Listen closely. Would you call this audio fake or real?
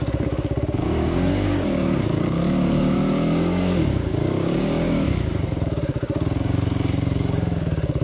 fake